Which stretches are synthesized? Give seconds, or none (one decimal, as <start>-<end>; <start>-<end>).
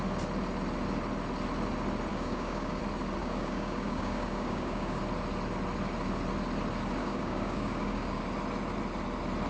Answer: 2.1-2.8; 3.2-5.0; 7.0-8.2